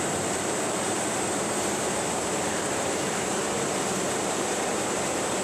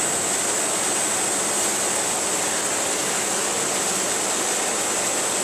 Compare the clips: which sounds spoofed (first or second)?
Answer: first